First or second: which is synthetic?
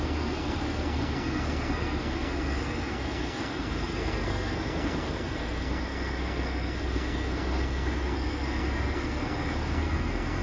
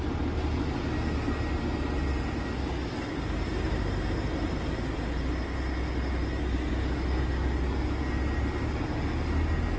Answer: first